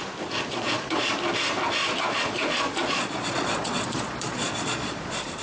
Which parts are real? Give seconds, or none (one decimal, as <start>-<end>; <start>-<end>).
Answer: 0.0-0.5; 1.1-1.8; 5.0-5.4